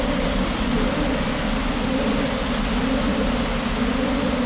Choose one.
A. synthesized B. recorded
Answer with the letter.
B